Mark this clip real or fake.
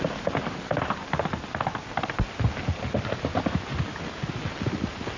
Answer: real